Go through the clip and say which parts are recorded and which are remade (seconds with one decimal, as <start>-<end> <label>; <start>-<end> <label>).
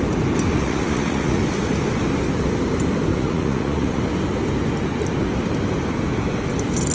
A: 0.0-0.5 recorded; 0.5-1.4 remade; 1.4-3.1 recorded; 3.1-4.0 remade; 4.0-6.9 recorded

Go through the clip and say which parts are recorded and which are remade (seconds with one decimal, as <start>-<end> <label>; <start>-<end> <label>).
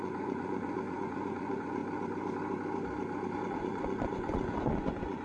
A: 0.0-1.8 remade; 1.8-3.5 recorded; 3.5-5.2 remade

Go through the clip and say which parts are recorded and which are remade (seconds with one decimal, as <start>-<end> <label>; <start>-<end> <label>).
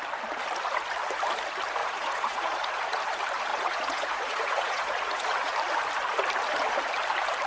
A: 0.0-1.8 recorded; 1.8-3.0 remade; 3.0-3.5 recorded; 3.5-5.5 remade; 5.5-7.5 recorded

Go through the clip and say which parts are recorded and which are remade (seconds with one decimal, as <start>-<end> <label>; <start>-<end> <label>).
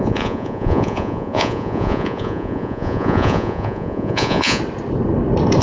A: 0.0-4.6 remade; 4.6-5.6 recorded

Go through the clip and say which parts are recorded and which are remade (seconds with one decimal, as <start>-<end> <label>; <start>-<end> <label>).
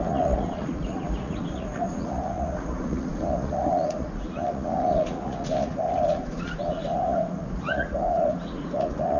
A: 0.0-9.2 remade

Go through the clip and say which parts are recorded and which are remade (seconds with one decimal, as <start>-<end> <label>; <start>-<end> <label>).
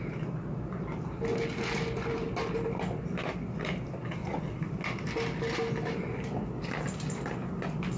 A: 0.0-4.2 recorded; 4.2-4.7 remade; 4.7-8.0 recorded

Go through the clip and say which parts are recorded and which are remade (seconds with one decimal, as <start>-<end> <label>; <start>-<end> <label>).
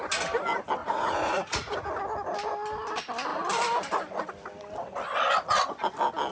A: 0.0-0.8 recorded; 0.8-1.9 remade; 1.9-6.3 recorded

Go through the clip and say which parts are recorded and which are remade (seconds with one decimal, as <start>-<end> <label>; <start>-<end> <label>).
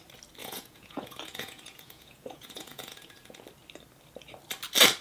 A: 0.0-0.4 recorded; 0.4-3.4 remade; 3.4-5.0 recorded